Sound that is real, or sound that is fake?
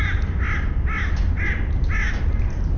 real